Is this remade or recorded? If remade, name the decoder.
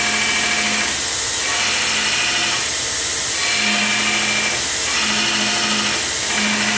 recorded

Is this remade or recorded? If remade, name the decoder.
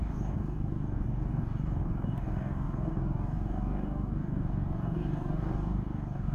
remade, codec, DAC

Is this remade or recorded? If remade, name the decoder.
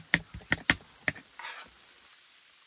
recorded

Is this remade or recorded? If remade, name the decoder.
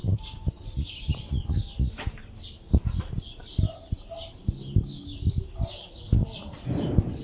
recorded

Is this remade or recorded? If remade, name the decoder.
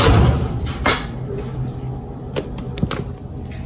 recorded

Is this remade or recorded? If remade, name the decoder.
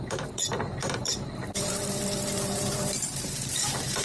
remade, vocoder, BigVGAN v2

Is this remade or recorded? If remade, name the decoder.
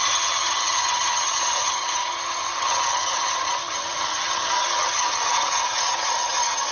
remade, vocoder, HiFi-GAN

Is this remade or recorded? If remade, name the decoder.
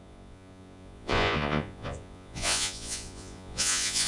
remade, vocoder, Vocos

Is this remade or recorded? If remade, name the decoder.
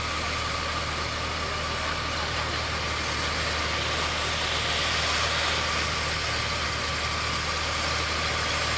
recorded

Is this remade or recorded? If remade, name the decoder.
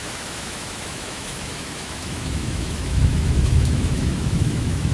remade, autoencoder, DAC-VAE